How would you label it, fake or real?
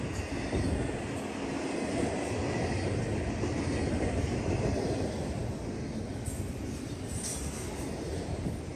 real